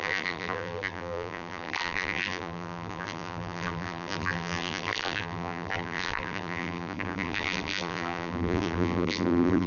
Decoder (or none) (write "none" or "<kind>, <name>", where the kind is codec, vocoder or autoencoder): vocoder, BigVGAN v2